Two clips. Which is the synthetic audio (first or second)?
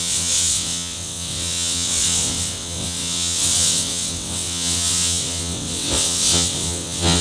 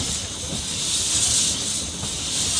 first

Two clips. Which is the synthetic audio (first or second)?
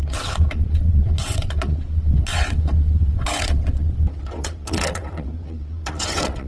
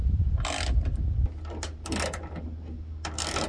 first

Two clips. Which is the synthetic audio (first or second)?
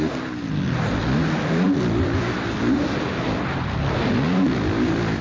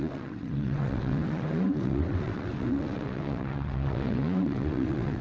second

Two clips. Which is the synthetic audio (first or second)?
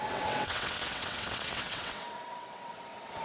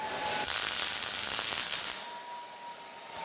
first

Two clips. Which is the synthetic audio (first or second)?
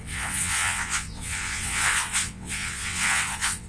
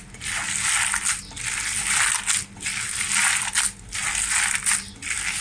first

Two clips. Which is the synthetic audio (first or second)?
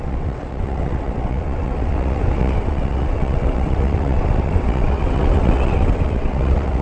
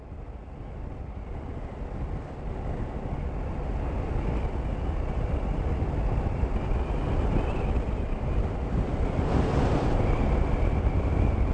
first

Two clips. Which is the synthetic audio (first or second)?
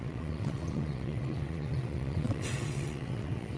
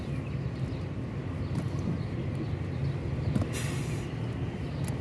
first